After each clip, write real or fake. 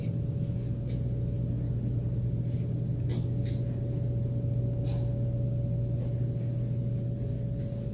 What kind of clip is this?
real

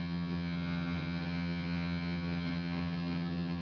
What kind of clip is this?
fake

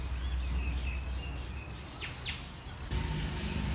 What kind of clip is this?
real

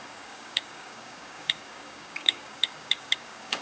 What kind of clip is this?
fake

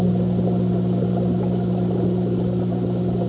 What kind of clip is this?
real